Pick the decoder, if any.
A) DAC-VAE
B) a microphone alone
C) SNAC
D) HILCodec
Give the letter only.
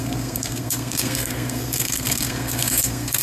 C